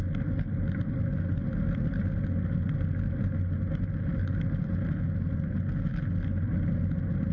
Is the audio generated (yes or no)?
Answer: no